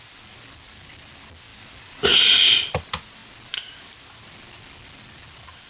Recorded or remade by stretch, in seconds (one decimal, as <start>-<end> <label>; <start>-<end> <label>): 0.0-1.5 recorded; 1.5-2.3 remade; 2.3-5.7 recorded